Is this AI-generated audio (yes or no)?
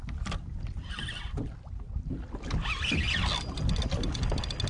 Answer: no